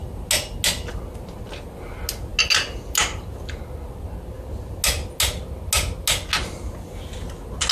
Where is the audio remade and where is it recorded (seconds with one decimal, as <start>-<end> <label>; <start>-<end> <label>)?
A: 0.0-7.7 recorded

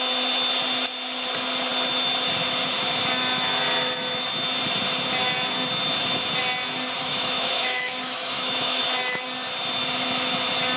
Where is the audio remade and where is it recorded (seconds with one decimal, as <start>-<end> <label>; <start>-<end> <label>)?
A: 0.0-7.0 recorded; 7.0-8.8 remade; 8.8-10.8 recorded

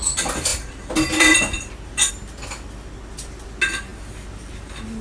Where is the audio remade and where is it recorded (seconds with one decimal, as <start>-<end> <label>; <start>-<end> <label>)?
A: 0.0-5.0 recorded

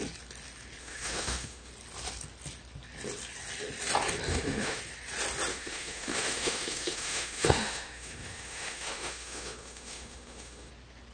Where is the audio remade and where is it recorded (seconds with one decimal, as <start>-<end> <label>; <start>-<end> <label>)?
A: 0.0-0.8 recorded; 0.8-1.7 remade; 1.7-4.3 recorded; 4.3-4.8 remade; 4.8-5.5 recorded; 5.5-10.7 remade; 10.7-11.1 recorded

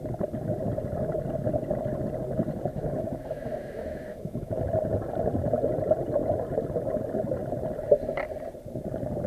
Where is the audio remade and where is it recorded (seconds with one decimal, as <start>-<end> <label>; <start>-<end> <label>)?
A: 0.0-2.7 recorded; 2.7-4.6 remade; 4.6-9.3 recorded

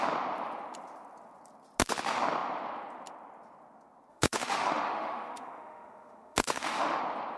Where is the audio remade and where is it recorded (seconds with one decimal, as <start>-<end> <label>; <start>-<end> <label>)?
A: 0.0-4.1 recorded; 4.1-7.0 remade; 7.0-7.4 recorded

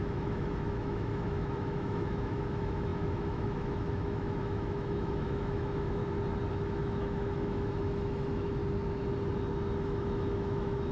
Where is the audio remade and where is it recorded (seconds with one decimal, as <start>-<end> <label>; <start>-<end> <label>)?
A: 0.0-6.0 remade; 6.0-6.5 recorded; 6.5-8.6 remade; 8.6-9.8 recorded; 9.8-10.9 remade

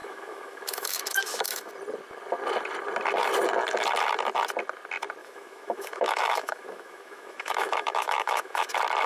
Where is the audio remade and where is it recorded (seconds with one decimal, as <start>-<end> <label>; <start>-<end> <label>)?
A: 0.0-1.7 remade; 1.7-5.2 recorded; 5.2-8.7 remade; 8.7-9.1 recorded